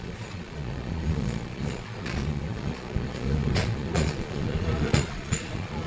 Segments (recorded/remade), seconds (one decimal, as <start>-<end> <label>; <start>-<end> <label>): 0.0-5.9 remade